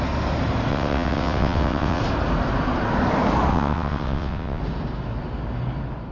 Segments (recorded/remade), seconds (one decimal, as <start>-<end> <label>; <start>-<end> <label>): 0.0-0.7 recorded; 0.7-2.0 remade; 2.0-3.5 recorded; 3.5-4.6 remade; 4.6-6.1 recorded